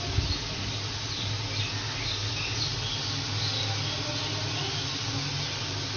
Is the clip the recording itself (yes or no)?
yes